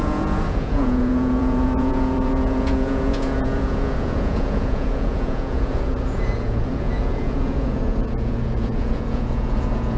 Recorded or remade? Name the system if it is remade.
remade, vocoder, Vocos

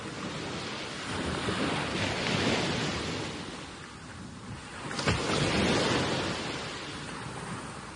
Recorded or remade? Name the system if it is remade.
recorded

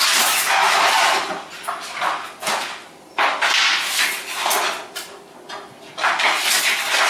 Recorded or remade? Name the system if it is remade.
recorded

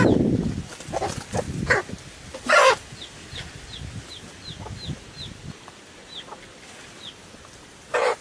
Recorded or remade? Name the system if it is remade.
recorded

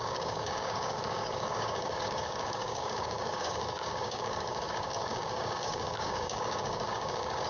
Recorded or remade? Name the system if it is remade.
remade, codec, DAC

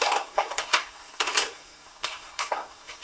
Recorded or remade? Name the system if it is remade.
remade, codec, SNAC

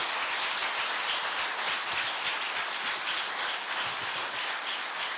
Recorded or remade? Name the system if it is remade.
recorded